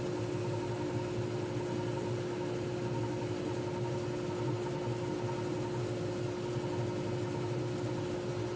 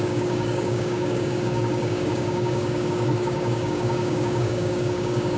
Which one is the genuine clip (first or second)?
first